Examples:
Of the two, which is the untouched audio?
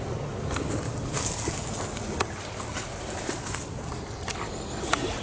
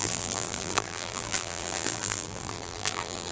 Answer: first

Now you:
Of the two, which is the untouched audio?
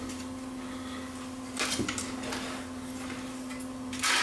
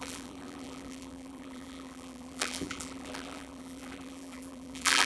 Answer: first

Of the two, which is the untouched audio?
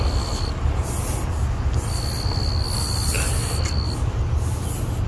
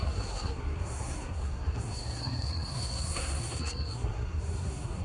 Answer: first